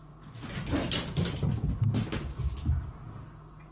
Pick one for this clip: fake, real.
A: real